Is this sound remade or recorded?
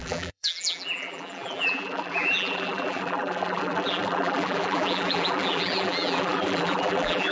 remade